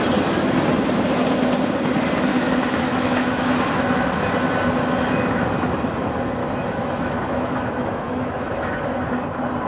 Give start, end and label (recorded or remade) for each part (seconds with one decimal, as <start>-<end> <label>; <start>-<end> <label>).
0.0-2.3 recorded; 2.3-3.8 remade; 3.8-6.4 recorded; 6.4-8.9 remade; 8.9-9.7 recorded

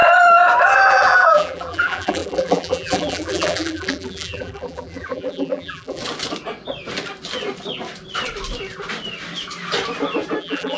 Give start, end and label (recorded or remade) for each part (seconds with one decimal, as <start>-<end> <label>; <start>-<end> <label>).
0.0-0.9 recorded; 0.9-6.0 remade; 6.0-10.4 recorded; 10.4-10.8 remade

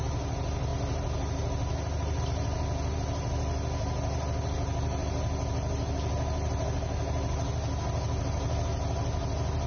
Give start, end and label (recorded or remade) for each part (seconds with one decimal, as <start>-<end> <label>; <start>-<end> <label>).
0.0-9.7 recorded

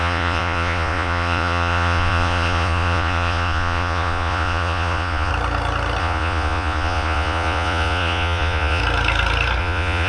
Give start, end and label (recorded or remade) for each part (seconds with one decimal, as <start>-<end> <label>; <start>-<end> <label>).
0.0-5.3 remade; 5.3-6.0 recorded; 6.0-8.8 remade; 8.8-9.6 recorded; 9.6-10.1 remade

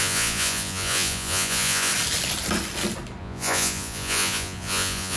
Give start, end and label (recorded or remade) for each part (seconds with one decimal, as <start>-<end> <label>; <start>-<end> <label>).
0.0-1.9 remade; 1.9-3.2 recorded; 3.2-5.2 remade

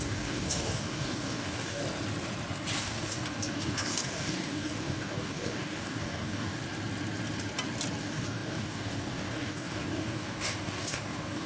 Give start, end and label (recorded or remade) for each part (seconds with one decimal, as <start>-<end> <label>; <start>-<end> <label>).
0.0-1.8 remade; 1.8-2.8 recorded; 2.8-6.6 remade; 6.6-8.0 recorded; 8.0-11.5 remade

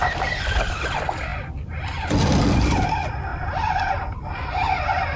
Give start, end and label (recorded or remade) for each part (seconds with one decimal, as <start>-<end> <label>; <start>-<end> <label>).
0.0-3.3 recorded; 3.3-4.3 remade; 4.3-5.2 recorded

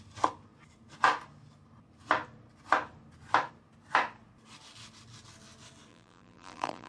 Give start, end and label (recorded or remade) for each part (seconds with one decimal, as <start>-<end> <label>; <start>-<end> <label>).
0.0-5.9 recorded; 5.9-6.9 remade